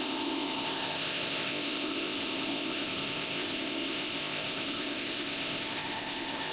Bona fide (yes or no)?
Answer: no